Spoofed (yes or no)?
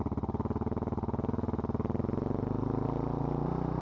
no